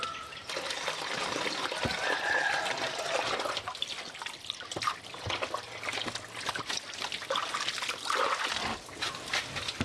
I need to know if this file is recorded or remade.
recorded